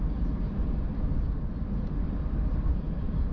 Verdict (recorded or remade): recorded